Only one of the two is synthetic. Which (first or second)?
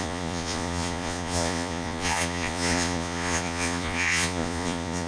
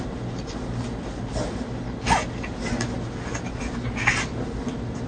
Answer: first